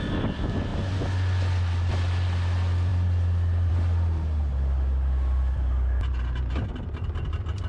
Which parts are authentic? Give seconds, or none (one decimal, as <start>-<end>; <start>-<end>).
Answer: 0.0-7.7